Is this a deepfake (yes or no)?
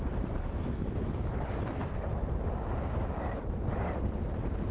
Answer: no